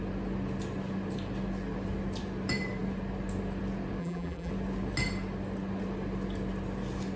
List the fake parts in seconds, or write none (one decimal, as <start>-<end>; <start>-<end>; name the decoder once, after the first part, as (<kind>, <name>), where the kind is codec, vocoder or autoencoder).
4.0-4.5 (vocoder, BigVGAN v2)